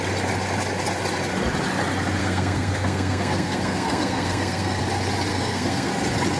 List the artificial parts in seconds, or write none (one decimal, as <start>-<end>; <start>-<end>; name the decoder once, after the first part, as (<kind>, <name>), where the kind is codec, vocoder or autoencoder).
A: 2.2-4.8 (codec, SNAC); 5.3-5.9